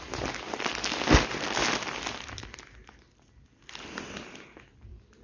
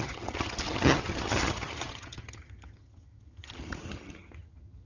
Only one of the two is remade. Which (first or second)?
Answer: second